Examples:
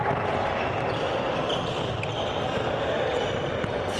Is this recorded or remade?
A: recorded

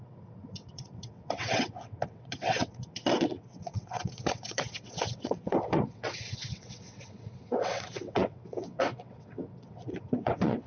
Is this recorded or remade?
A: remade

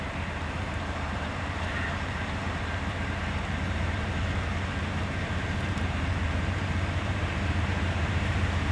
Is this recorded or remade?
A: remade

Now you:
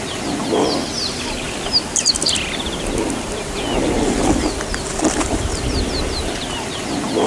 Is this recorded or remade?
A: recorded